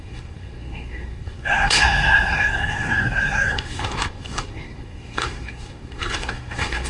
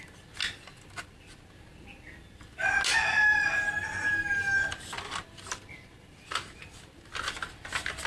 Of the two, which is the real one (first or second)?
second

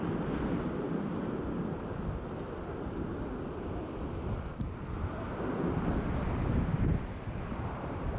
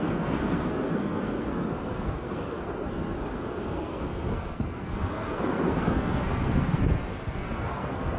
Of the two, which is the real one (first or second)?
first